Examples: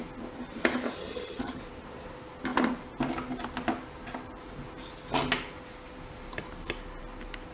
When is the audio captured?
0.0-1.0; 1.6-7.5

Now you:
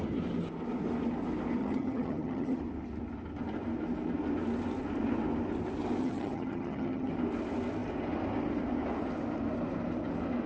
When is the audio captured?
0.0-1.6; 2.6-6.0; 7.1-10.5

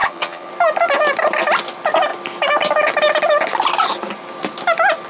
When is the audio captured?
0.5-5.1

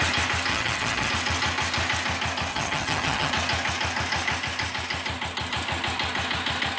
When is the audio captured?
0.0-0.5; 1.1-2.5; 3.3-6.8

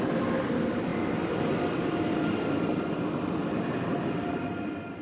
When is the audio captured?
0.0-5.0